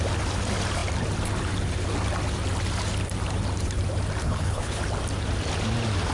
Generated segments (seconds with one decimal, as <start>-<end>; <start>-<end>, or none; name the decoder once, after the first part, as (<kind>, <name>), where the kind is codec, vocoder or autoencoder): 4.2-4.8 (codec, HILCodec)